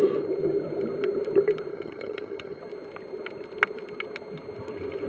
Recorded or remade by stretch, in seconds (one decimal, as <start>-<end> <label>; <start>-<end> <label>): 0.0-1.7 recorded; 1.7-2.6 remade; 2.6-5.1 recorded